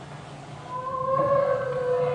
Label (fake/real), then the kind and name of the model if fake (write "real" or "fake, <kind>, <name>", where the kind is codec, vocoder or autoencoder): real